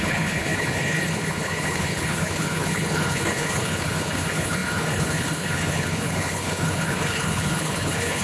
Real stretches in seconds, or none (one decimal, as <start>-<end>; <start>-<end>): none